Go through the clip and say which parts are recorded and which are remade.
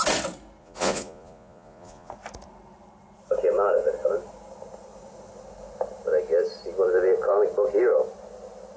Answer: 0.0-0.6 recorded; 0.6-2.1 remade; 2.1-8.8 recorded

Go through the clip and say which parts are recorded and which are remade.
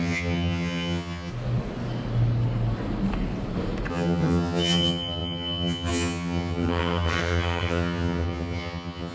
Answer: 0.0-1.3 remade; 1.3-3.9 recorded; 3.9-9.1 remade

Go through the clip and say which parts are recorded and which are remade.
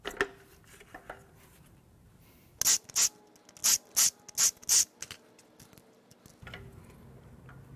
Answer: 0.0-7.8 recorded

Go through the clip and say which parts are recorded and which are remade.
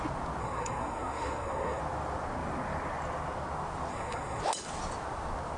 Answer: 0.0-0.4 recorded; 0.4-1.8 remade; 1.8-3.9 recorded; 3.9-4.4 remade; 4.4-5.6 recorded